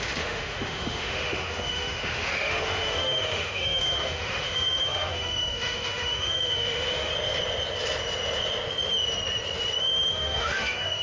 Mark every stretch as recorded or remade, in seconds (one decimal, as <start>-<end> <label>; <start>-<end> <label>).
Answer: 0.0-7.1 remade; 7.1-9.8 recorded; 9.8-11.0 remade

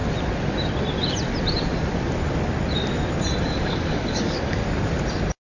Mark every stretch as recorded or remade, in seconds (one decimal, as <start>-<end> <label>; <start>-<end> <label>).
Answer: 0.0-3.4 recorded; 3.4-4.6 remade; 4.6-5.6 recorded